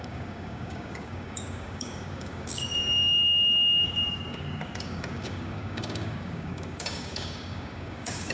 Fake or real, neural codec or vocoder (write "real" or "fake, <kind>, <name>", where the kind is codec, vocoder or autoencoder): fake, codec, DAC